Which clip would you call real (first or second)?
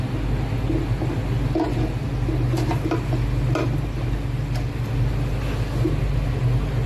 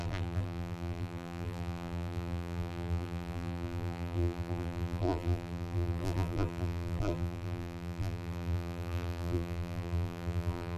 first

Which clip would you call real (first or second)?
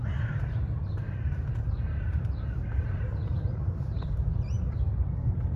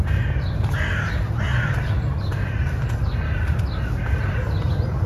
second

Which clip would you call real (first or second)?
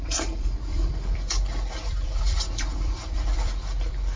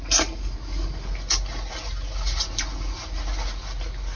second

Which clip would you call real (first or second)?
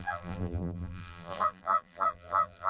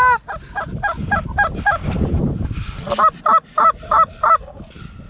second